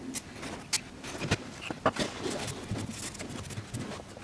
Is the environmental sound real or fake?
real